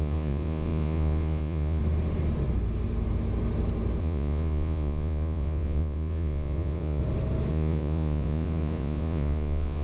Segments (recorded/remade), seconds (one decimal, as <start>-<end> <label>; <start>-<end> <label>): 0.0-1.8 remade; 1.8-4.0 recorded; 4.0-7.0 remade; 7.0-7.5 recorded; 7.5-9.8 remade